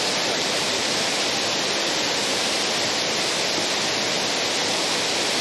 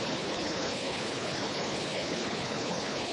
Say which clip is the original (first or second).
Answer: first